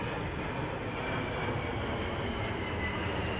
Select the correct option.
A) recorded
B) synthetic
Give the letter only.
A